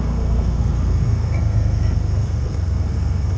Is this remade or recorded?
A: remade